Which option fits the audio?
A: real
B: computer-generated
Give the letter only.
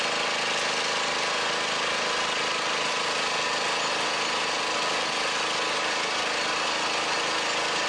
A